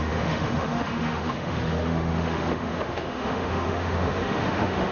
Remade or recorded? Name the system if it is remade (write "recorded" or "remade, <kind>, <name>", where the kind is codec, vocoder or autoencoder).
remade, autoencoder, DAC-VAE